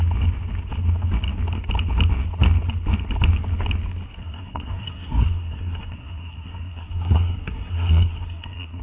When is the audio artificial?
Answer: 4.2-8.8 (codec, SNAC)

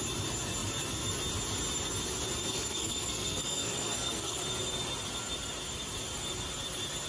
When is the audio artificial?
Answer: 2.5-4.4 (codec, SNAC)

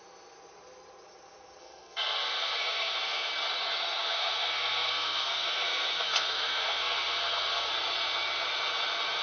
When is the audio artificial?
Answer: 1.6-3.3 (codec, SNAC); 4.0-7.7

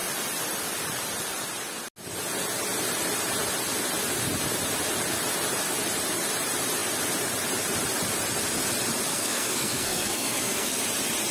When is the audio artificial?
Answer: 9.1-10.8 (codec, SNAC)

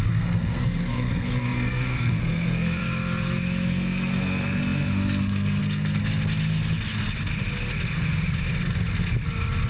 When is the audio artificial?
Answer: 0.0-2.8 (codec, SNAC); 3.7-6.0

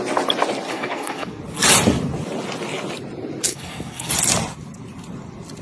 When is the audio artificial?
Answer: 0.7-1.4 (codec, SNAC); 3.5-4.1